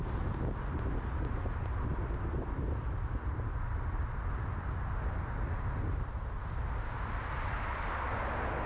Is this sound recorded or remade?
recorded